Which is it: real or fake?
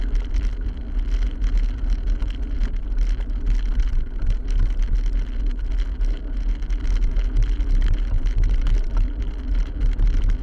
real